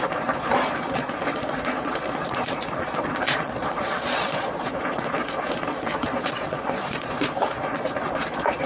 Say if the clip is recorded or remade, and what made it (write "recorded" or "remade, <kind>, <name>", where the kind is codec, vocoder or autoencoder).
remade, vocoder, Vocos